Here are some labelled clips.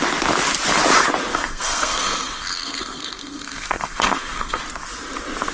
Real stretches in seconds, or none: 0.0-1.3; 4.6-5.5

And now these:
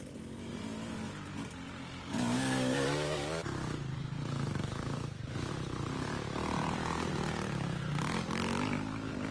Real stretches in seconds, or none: 0.0-2.1; 5.5-9.3